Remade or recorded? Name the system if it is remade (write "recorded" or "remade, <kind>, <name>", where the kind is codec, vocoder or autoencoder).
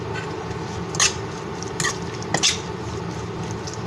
recorded